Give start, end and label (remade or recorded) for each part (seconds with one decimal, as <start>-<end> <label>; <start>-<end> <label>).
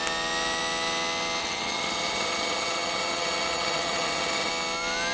0.0-1.4 recorded; 1.4-4.5 remade; 4.5-5.1 recorded